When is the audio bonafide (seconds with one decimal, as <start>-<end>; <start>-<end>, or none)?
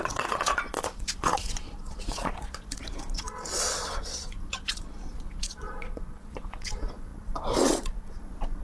none